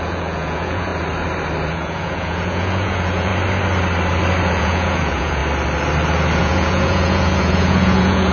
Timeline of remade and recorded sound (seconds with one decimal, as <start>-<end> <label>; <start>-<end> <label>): 0.0-0.9 remade; 0.9-1.7 recorded; 1.7-3.3 remade; 3.3-4.5 recorded; 4.5-5.4 remade; 5.4-6.4 recorded; 6.4-8.3 remade